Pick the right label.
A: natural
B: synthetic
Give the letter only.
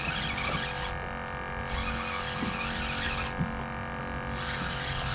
A